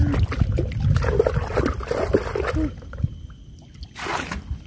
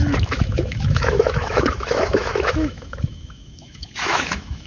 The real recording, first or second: first